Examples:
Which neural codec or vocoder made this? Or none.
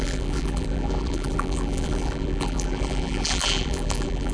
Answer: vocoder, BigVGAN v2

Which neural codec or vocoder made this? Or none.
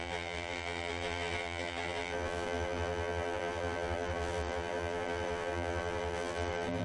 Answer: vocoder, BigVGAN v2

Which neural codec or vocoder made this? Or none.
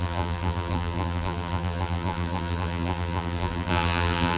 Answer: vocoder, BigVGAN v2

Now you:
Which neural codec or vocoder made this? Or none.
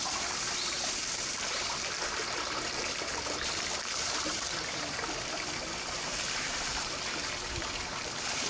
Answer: vocoder, BigVGAN v2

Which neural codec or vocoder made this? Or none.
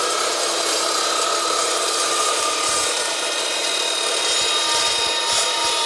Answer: vocoder, BigVGAN v2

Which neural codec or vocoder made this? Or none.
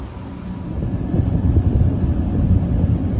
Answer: none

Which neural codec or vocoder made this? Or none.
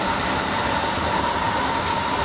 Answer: vocoder, BigVGAN v2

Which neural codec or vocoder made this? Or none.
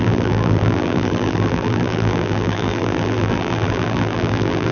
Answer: vocoder, BigVGAN v2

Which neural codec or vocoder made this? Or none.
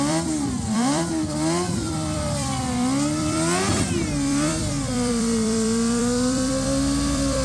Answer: vocoder, BigVGAN v2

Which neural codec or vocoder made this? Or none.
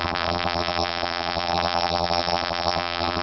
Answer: vocoder, BigVGAN v2